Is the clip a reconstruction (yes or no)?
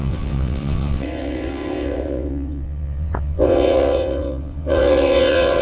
yes